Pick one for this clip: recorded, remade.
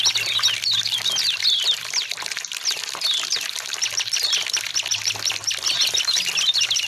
recorded